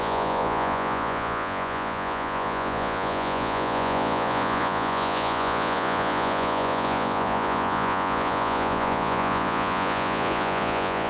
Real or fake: fake